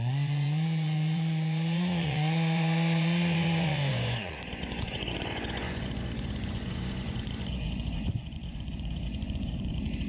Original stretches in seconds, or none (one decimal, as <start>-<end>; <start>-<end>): none

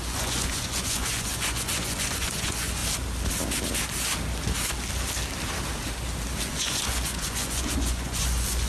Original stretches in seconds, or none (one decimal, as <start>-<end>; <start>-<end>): 2.8-6.4

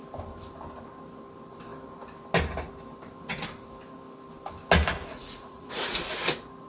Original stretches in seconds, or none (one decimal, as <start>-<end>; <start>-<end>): 0.0-5.1; 6.0-6.7

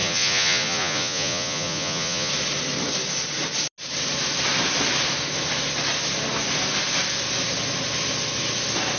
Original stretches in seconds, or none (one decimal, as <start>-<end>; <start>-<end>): 2.3-9.0

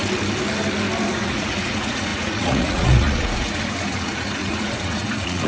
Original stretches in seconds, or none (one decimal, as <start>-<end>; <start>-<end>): 0.0-1.1

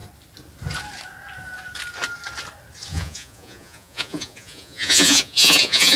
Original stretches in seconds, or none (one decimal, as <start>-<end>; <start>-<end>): 0.0-2.9

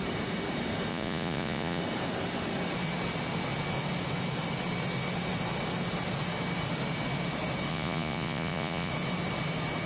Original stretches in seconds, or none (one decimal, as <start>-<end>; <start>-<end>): 0.0-0.9; 1.8-7.7; 8.9-9.9

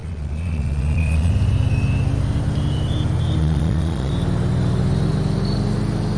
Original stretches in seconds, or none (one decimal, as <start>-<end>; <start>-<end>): 1.3-3.4; 4.1-6.2